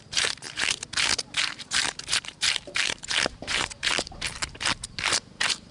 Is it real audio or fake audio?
fake